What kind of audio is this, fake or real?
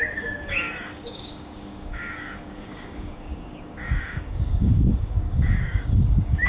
fake